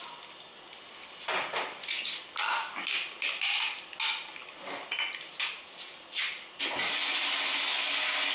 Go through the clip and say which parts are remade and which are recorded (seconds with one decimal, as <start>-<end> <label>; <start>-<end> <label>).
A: 0.0-8.3 recorded